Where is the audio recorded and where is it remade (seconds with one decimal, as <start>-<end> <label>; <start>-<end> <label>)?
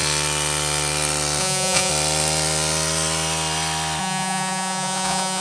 0.0-1.4 recorded; 1.4-1.9 remade; 1.9-4.0 recorded; 4.0-5.4 remade